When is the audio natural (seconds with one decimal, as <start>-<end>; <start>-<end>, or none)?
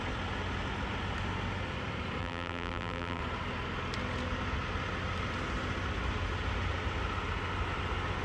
0.0-2.2; 3.2-8.2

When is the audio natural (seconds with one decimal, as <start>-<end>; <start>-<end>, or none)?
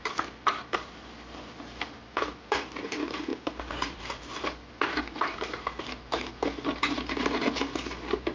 none